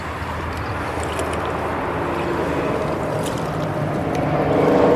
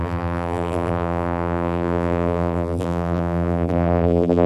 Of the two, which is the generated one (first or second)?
second